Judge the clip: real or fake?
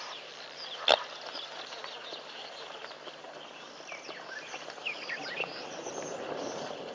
fake